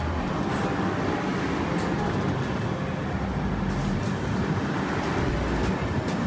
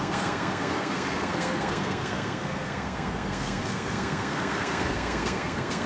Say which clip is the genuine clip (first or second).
first